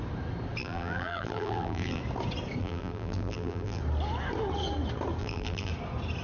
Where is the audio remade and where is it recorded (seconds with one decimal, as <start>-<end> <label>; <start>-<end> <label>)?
0.0-0.6 recorded; 0.6-2.0 remade; 2.0-2.6 recorded; 2.6-3.8 remade; 3.8-5.2 recorded; 5.2-5.7 remade; 5.7-6.2 recorded